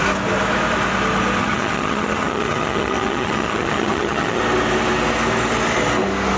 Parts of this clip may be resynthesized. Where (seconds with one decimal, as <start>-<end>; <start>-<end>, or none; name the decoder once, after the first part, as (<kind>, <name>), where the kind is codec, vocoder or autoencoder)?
1.4-4.4 (vocoder, HiFi-GAN)